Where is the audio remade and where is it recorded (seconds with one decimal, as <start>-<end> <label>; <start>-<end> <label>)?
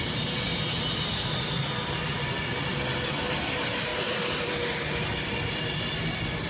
0.0-0.5 recorded; 0.5-3.4 remade; 3.4-3.9 recorded; 3.9-4.5 remade; 4.5-6.5 recorded